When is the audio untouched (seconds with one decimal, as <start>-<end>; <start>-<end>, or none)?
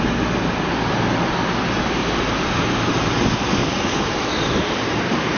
0.0-2.0; 2.9-3.7